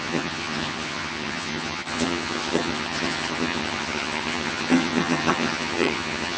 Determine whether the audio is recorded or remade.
remade